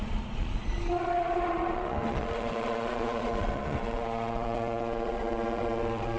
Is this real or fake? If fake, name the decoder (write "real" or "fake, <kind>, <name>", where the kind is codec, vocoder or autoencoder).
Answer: fake, vocoder, Vocos